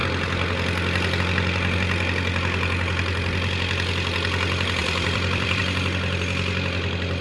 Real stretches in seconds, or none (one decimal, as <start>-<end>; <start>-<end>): 0.0-4.8; 5.6-7.2